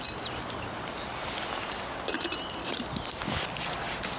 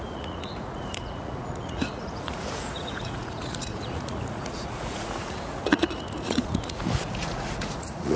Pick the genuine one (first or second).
first